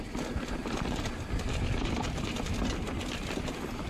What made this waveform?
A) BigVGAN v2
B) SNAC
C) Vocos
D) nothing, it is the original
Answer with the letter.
D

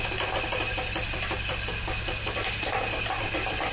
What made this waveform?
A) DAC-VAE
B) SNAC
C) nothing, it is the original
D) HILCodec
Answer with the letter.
C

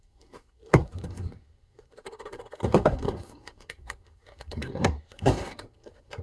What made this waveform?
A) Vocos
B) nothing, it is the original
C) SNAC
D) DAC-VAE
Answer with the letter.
C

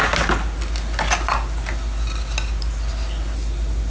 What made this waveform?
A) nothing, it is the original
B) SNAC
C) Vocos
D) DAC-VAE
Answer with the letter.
A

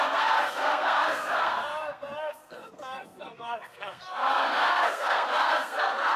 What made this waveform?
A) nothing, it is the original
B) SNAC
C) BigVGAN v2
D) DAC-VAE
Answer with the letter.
B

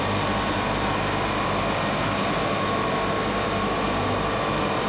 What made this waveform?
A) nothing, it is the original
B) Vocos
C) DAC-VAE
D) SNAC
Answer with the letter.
A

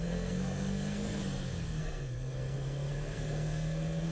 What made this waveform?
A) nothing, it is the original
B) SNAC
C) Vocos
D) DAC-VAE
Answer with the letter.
B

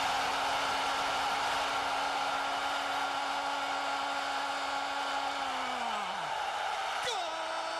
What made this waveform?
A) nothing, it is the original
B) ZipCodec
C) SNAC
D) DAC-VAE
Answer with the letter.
A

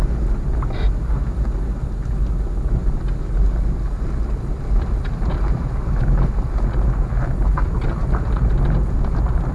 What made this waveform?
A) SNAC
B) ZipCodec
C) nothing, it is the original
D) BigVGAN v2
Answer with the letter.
C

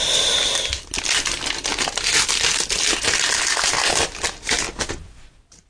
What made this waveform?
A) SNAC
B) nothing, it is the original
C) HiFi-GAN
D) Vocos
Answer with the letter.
B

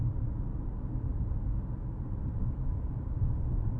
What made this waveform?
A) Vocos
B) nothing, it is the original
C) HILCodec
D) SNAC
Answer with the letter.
B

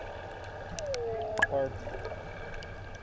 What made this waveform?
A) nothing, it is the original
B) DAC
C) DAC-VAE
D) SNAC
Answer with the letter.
A